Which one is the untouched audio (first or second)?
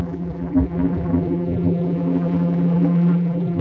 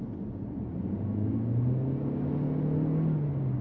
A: second